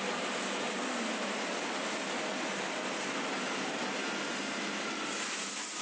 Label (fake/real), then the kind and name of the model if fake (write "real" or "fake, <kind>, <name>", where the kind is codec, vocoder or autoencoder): real